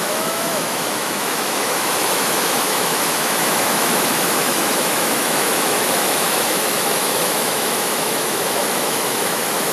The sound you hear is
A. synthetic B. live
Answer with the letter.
A